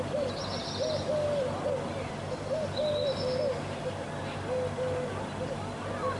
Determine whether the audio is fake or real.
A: real